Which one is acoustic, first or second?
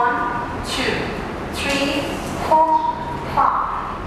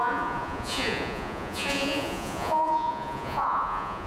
first